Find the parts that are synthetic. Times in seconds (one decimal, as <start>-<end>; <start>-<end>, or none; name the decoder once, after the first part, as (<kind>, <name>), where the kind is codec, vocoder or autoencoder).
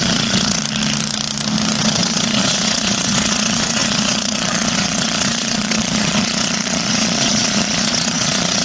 0.0-0.6 (vocoder, Vocos); 1.8-8.6